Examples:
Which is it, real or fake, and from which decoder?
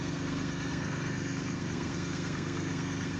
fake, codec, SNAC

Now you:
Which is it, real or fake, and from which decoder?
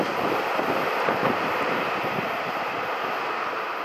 real